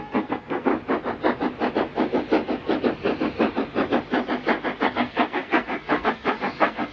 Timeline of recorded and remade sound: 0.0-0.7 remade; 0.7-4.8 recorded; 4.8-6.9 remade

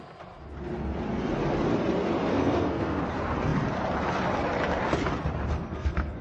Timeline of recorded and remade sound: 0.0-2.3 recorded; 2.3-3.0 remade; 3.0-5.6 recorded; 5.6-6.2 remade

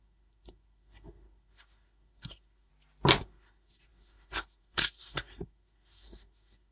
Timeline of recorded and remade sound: 0.0-2.7 remade; 2.7-3.2 recorded; 3.2-6.7 remade

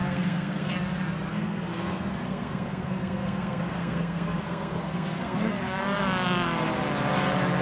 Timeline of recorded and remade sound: 0.0-0.7 remade; 0.7-1.3 recorded; 1.3-5.8 remade; 5.8-7.6 recorded

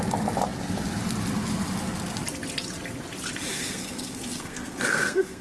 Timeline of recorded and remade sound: 0.0-3.5 recorded; 3.5-5.4 remade

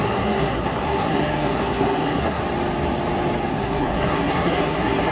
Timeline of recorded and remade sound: 0.0-2.4 remade; 2.4-3.5 recorded; 3.5-5.1 remade

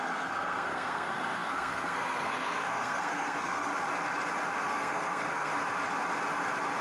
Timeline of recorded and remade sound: 0.0-3.7 remade; 3.7-4.7 recorded; 4.7-5.5 remade; 5.5-6.8 recorded